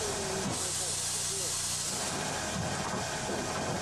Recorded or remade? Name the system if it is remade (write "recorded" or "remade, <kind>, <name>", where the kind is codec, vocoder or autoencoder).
recorded